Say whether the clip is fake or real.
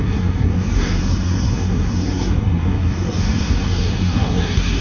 fake